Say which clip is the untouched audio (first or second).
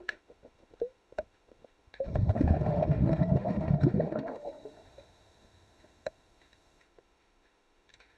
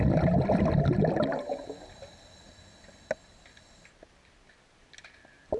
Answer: second